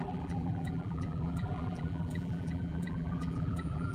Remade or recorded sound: remade